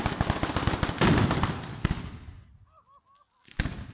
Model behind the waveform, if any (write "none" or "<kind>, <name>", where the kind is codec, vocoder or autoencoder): none